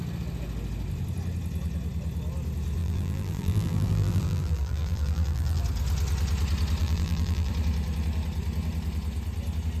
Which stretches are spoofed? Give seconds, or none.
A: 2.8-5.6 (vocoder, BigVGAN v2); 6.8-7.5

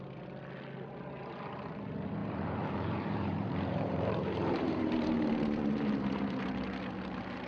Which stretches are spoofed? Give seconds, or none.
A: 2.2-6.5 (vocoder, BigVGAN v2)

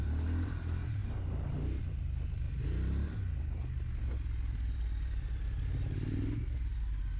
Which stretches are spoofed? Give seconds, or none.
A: 0.0-1.0 (vocoder, BigVGAN v2); 1.8-7.2

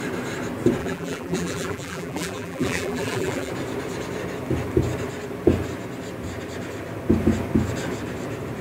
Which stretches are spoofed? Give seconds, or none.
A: 0.8-3.5 (vocoder, BigVGAN v2)